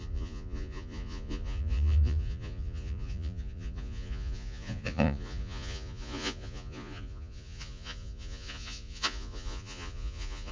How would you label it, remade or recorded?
remade